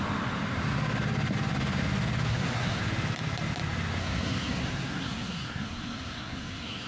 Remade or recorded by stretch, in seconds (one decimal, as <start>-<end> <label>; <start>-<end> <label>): 0.0-2.3 recorded; 2.3-2.8 remade; 2.8-4.0 recorded; 4.0-6.9 remade